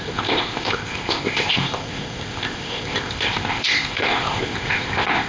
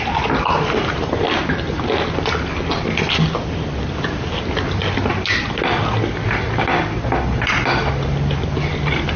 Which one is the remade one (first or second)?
first